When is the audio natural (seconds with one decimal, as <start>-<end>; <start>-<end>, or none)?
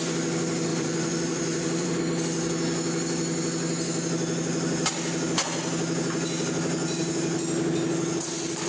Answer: 0.0-0.7; 2.0-8.7